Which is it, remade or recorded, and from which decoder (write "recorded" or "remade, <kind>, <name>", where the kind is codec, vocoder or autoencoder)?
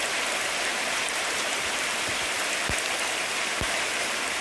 remade, vocoder, BigVGAN v2